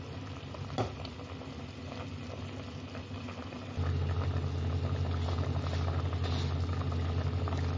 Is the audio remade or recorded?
recorded